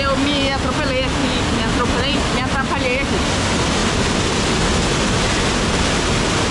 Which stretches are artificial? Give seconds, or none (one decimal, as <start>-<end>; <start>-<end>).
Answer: none